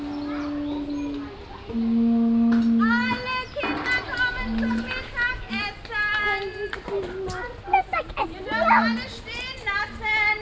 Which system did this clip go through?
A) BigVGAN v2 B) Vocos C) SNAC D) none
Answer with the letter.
D